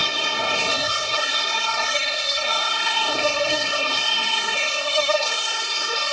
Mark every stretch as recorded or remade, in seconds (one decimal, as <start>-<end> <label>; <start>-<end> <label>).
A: 0.0-6.1 remade